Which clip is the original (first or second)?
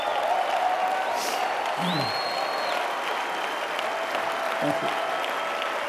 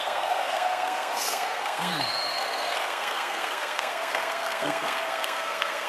first